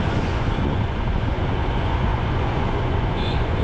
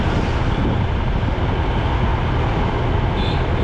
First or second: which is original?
second